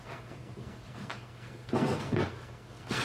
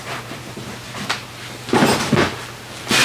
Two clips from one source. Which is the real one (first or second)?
second